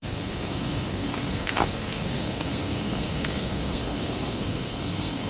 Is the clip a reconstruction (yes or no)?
yes